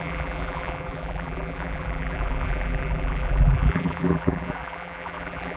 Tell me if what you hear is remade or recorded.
remade